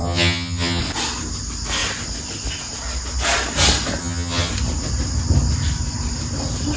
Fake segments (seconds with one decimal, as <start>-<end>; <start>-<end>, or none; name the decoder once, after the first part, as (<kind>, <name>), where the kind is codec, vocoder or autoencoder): 0.0-0.8 (vocoder, HiFi-GAN); 4.0-4.5